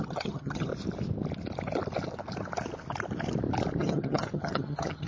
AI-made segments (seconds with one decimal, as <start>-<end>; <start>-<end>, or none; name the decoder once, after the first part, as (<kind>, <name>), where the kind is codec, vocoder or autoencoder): 0.0-0.7 (vocoder, HiFi-GAN); 3.8-5.1